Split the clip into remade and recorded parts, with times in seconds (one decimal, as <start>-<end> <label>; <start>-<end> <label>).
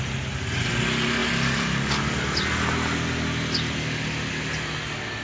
0.0-5.2 recorded